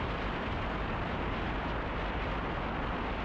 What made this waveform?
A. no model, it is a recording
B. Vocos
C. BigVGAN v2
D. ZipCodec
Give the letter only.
A